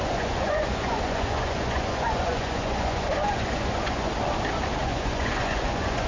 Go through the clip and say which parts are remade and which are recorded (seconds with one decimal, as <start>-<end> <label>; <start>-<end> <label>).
0.0-4.1 remade; 4.1-4.8 recorded; 4.8-6.1 remade

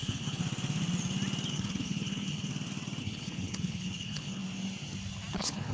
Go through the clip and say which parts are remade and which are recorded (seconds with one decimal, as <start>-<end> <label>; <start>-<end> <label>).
0.0-0.4 remade; 0.4-1.5 recorded; 1.5-2.5 remade; 2.5-3.0 recorded; 3.0-4.4 remade; 4.4-5.3 recorded; 5.3-5.7 remade

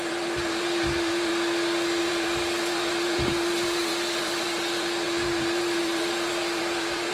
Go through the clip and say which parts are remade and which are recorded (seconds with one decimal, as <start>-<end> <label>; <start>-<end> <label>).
0.0-1.3 remade; 1.3-2.0 recorded; 2.0-7.1 remade

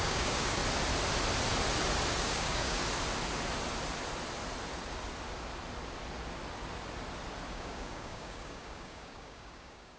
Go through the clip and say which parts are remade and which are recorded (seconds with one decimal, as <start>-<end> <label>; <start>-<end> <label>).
0.0-0.6 remade; 0.6-2.2 recorded; 2.2-2.8 remade; 2.8-7.5 recorded; 7.5-10.0 remade